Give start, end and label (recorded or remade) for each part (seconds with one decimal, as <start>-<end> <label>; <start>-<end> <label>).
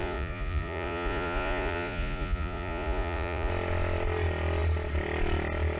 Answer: 0.0-3.5 remade; 3.5-5.8 recorded